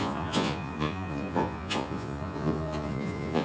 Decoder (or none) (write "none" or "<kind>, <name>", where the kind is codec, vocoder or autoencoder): vocoder, Vocos